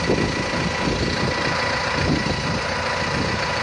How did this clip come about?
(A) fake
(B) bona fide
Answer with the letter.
B